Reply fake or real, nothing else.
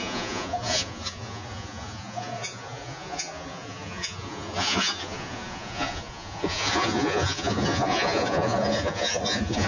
fake